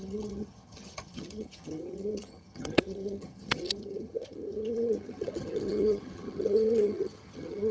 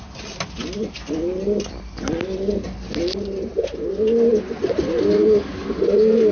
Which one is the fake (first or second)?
first